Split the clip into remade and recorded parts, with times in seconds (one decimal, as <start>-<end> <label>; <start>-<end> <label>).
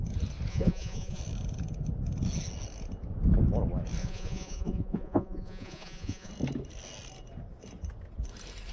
0.0-0.5 recorded; 0.5-1.2 remade; 1.2-4.0 recorded; 4.0-6.3 remade; 6.3-8.7 recorded